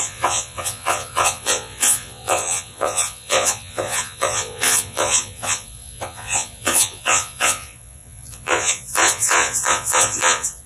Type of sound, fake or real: fake